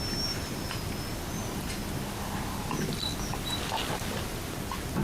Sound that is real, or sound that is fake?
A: real